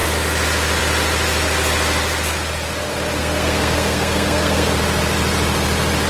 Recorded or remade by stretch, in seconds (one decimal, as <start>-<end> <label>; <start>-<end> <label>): 0.0-3.2 recorded; 3.2-4.7 remade; 4.7-6.1 recorded